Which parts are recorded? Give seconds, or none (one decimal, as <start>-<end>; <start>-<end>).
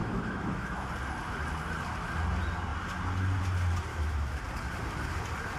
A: 0.9-3.9; 4.4-5.6